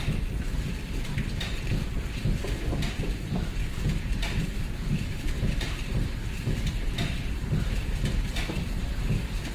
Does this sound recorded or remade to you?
remade